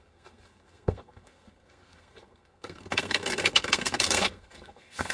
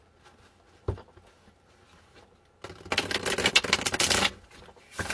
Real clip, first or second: second